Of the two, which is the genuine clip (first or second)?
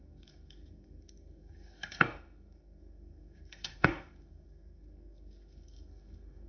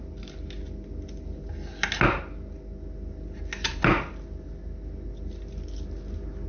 second